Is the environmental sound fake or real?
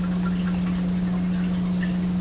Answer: real